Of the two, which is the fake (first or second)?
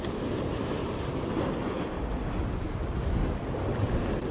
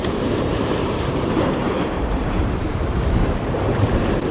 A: second